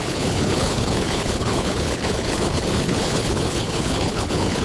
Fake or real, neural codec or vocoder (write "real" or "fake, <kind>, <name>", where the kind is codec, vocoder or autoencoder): fake, codec, HILCodec